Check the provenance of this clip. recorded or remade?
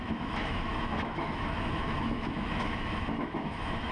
remade